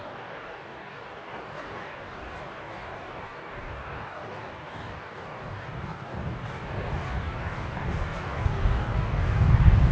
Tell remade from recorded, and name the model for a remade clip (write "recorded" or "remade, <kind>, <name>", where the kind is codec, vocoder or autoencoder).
remade, codec, DAC